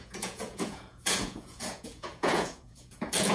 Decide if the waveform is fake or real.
fake